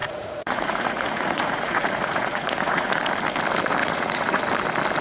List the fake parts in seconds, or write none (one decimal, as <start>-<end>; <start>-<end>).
0.0-3.0; 3.8-4.4